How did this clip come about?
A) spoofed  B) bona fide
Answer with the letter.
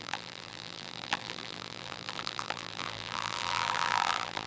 A